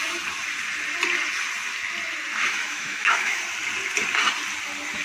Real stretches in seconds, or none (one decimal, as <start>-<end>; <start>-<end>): 0.0-2.3; 3.4-5.0